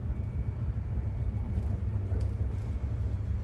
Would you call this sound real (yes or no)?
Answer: yes